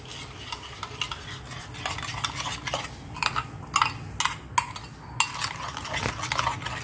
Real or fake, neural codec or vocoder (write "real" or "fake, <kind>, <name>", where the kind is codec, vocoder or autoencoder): real